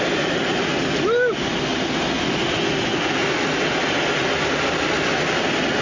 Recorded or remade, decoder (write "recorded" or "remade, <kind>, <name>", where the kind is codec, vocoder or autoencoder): recorded